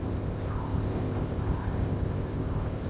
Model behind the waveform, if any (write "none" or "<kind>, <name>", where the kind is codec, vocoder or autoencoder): codec, ZipCodec